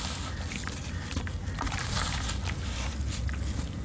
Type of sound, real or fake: real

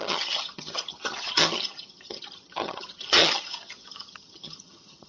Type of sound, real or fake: fake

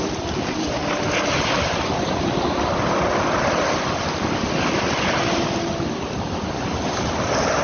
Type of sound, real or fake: real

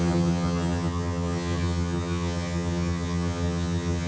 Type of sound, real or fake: fake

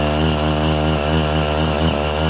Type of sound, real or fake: real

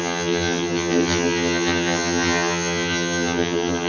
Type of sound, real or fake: fake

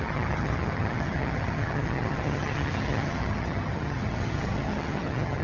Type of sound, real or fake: fake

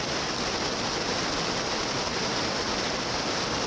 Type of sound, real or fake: real